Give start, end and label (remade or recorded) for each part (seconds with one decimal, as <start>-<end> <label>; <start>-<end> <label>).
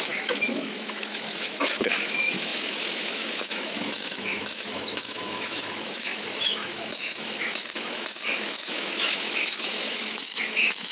0.0-10.9 remade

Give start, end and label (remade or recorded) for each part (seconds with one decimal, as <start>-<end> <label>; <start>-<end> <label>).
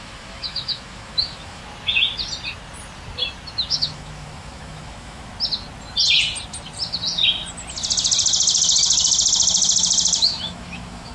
0.0-1.6 remade; 1.6-3.7 recorded; 3.7-5.3 remade; 5.3-10.2 recorded; 10.2-11.1 remade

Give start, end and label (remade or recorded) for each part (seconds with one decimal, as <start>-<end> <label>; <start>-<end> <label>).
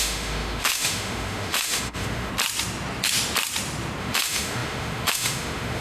0.0-2.3 remade; 2.3-4.0 recorded; 4.0-5.8 remade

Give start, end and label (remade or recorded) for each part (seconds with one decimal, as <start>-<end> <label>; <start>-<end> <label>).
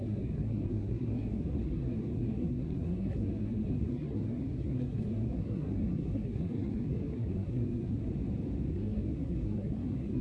0.0-8.1 remade; 8.1-8.7 recorded; 8.7-10.2 remade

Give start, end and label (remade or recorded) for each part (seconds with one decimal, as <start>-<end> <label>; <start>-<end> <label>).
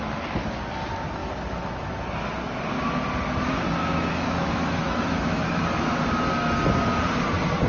0.0-1.2 recorded; 1.2-2.0 remade; 2.0-3.8 recorded; 3.8-5.6 remade; 5.6-7.7 recorded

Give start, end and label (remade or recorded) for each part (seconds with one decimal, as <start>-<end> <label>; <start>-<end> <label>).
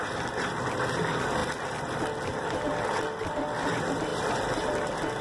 0.0-4.1 recorded; 4.1-4.7 remade; 4.7-5.2 recorded